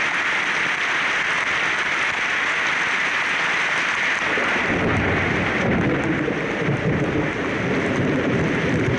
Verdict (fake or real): real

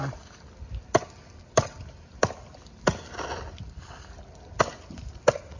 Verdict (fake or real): real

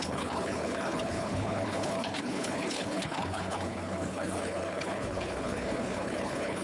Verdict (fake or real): fake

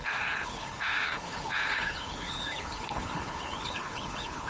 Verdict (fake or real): fake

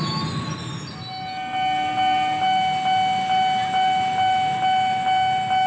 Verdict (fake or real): real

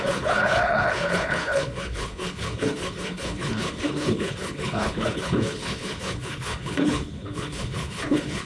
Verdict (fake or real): fake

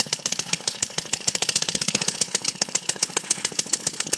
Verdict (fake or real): fake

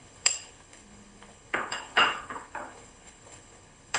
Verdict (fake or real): fake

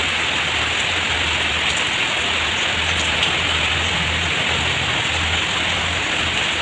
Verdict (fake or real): real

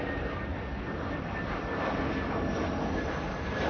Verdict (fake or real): real